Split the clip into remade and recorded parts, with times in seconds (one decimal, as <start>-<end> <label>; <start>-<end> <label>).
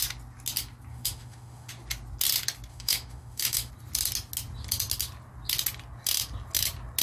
0.0-0.9 recorded; 0.9-1.7 remade; 1.7-2.7 recorded; 2.7-3.7 remade; 3.7-7.0 recorded